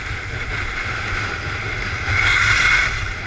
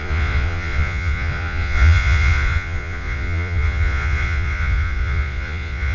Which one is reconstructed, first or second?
second